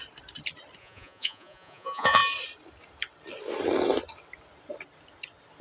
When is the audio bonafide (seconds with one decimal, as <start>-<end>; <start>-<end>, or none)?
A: 0.0-0.8; 2.2-5.6